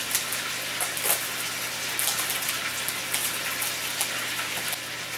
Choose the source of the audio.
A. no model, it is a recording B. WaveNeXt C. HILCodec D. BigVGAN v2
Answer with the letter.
A